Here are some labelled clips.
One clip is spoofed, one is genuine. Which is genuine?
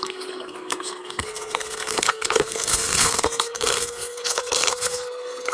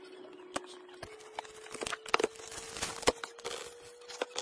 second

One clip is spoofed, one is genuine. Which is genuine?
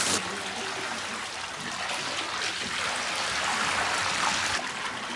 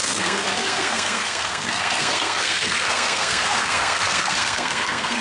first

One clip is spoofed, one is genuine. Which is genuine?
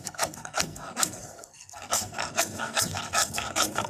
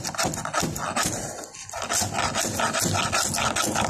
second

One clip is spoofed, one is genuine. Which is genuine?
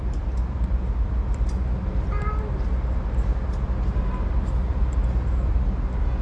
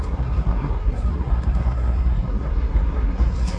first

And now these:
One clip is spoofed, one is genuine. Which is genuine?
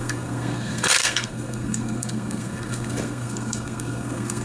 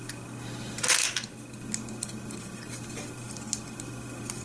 second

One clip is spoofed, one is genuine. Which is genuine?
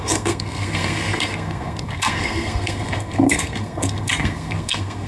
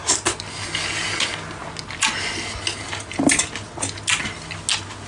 second